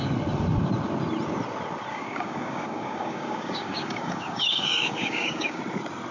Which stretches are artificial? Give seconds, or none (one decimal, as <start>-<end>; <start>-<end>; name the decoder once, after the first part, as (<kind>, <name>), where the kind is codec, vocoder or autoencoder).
1.9-5.6 (codec, DAC)